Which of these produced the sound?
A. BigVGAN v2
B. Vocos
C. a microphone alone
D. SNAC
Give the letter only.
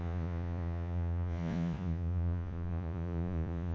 B